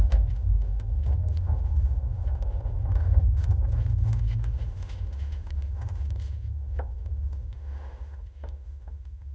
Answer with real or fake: fake